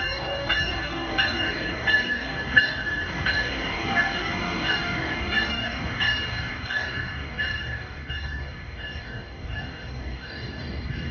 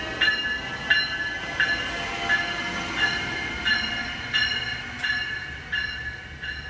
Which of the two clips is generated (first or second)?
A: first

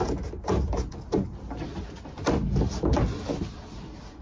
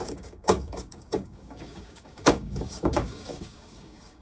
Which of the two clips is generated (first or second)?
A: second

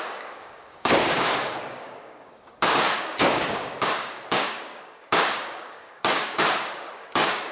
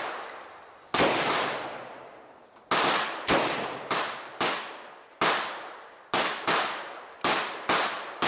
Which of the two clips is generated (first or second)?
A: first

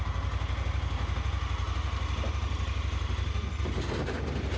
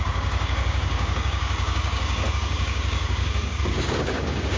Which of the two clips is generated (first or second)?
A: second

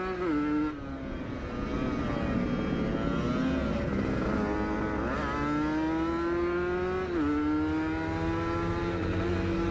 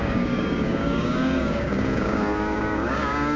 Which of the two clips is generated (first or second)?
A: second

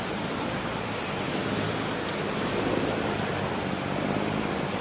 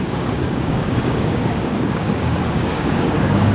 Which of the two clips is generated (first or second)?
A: second